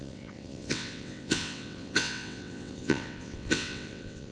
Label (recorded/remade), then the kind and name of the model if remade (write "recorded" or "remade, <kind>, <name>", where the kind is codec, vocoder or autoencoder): remade, vocoder, WaveNeXt